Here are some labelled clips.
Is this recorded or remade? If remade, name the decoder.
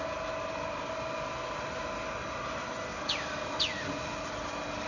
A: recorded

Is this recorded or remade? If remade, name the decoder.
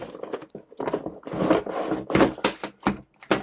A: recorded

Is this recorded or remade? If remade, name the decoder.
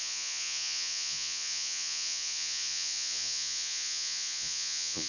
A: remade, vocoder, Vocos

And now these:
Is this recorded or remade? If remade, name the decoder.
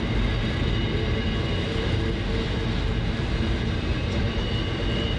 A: recorded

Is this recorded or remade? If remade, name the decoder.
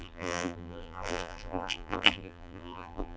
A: remade, vocoder, BigVGAN v2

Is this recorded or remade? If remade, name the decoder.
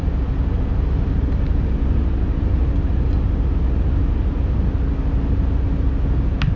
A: recorded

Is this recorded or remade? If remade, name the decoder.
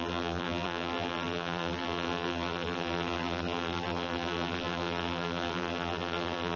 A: remade, vocoder, BigVGAN v2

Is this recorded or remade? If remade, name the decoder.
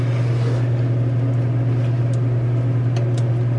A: recorded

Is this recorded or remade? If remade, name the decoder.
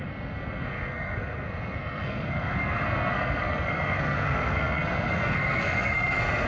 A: remade, codec, SNAC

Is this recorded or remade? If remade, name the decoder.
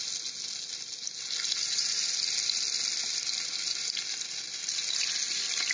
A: recorded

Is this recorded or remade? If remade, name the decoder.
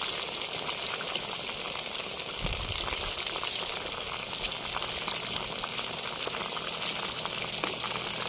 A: recorded